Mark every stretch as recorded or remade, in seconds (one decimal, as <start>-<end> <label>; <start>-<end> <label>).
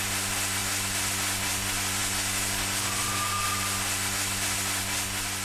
0.0-5.4 recorded